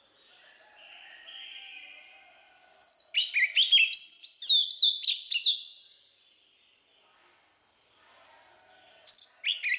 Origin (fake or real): real